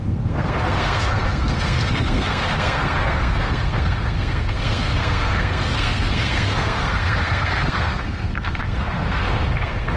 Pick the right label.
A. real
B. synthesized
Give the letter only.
B